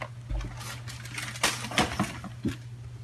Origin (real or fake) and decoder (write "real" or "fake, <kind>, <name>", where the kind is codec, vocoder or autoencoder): real